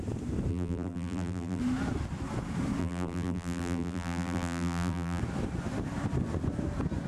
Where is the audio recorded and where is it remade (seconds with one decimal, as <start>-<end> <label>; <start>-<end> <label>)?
0.0-0.5 recorded; 0.5-1.6 remade; 1.6-2.8 recorded; 2.8-5.2 remade; 5.2-7.1 recorded